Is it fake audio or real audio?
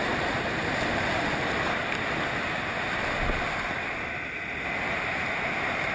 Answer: real